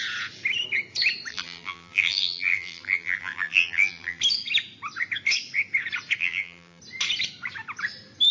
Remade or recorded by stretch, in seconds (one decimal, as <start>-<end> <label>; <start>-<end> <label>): 0.0-1.3 recorded; 1.3-4.2 remade; 4.2-6.2 recorded; 6.2-6.8 remade; 6.8-8.3 recorded